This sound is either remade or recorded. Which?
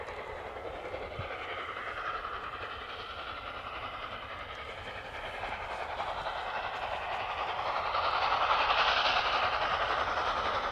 recorded